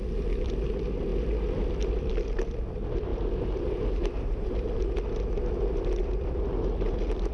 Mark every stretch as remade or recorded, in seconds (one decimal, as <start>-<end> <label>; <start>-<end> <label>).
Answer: 0.0-3.1 recorded; 3.1-4.9 remade; 4.9-7.3 recorded